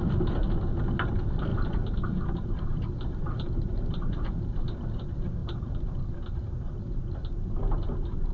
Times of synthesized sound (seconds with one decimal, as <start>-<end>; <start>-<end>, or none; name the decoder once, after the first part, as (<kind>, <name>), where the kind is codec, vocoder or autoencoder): 1.5-4.3 (vocoder, BigVGAN v2); 5.4-6.0